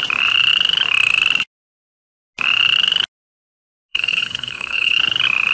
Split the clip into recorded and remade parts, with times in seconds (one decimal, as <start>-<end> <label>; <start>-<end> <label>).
0.0-3.9 recorded; 3.9-5.0 remade; 5.0-5.5 recorded